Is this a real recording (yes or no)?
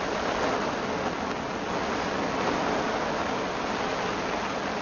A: yes